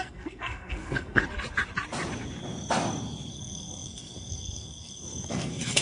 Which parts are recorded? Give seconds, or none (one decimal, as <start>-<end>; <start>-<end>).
1.2-3.3